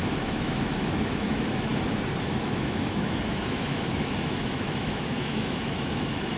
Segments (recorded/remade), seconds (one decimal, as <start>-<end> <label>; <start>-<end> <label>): 0.0-1.7 remade; 1.7-2.2 recorded; 2.2-6.4 remade